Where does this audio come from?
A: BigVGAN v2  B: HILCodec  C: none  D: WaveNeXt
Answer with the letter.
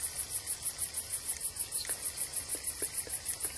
C